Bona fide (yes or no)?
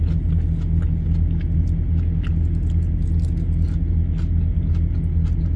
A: yes